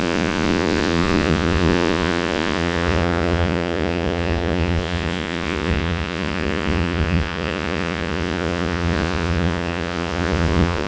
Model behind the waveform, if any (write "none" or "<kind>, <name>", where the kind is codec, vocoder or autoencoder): vocoder, Vocos